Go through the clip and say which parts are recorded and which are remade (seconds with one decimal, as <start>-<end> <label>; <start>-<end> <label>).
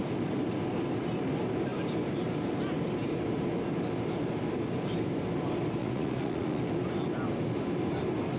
0.0-5.8 recorded; 5.8-6.6 remade; 6.6-8.4 recorded